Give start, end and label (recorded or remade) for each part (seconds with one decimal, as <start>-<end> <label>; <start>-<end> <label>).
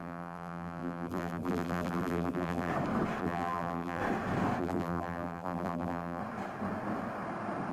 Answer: 0.0-2.7 remade; 2.7-3.2 recorded; 3.2-4.0 remade; 4.0-4.6 recorded; 4.6-6.2 remade; 6.2-7.7 recorded